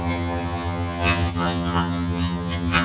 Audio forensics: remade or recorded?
remade